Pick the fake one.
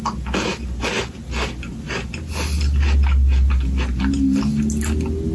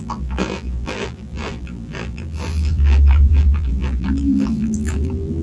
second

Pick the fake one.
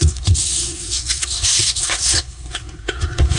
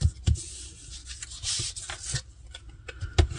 first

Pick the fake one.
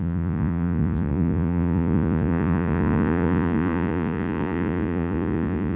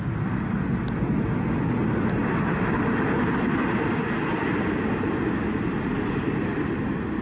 first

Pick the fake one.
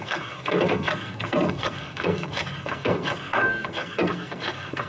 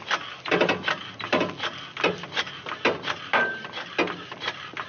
first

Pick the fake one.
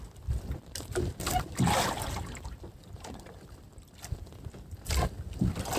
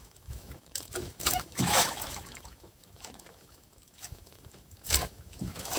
second